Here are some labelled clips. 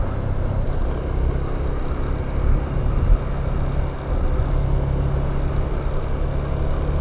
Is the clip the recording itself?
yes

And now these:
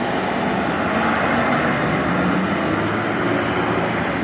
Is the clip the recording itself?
yes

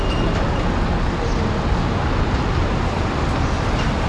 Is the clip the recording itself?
yes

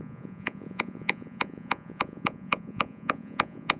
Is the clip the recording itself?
no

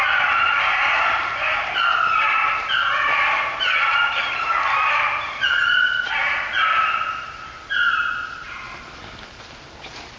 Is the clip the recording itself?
yes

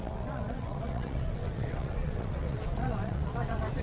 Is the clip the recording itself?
no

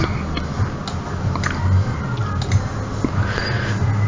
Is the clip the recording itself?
yes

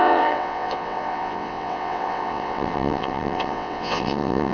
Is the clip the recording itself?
no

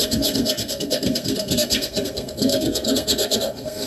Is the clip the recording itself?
no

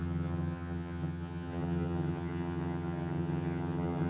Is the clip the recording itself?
no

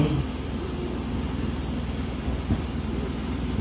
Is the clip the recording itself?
yes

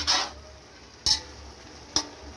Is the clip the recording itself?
yes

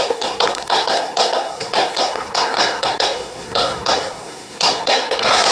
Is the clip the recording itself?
no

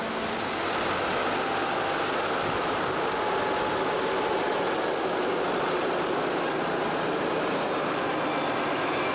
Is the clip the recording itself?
yes